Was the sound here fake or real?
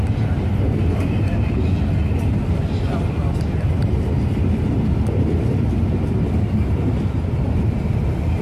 real